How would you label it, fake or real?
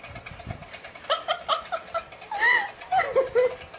real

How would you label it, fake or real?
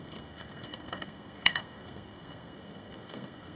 fake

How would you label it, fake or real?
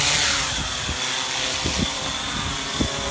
real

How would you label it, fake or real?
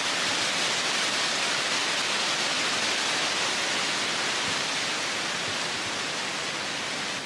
real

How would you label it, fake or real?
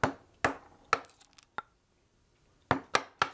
real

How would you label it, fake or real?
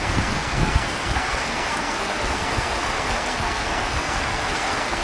fake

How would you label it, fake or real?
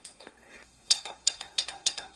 fake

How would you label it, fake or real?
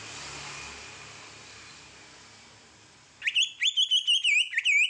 real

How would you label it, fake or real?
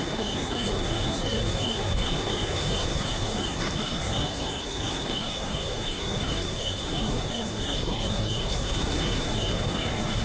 fake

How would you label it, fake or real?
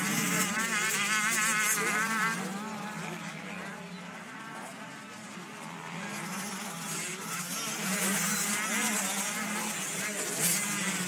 real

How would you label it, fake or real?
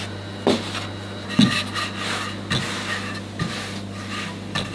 real